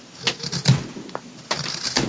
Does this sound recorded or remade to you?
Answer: recorded